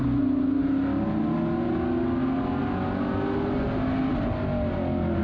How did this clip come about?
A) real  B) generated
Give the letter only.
A